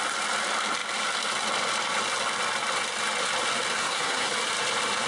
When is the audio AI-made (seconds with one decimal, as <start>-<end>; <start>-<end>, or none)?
3.8-4.3